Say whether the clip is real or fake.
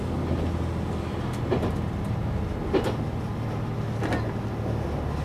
real